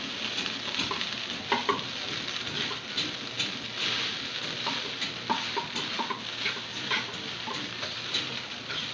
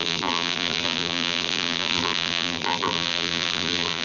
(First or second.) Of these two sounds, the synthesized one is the second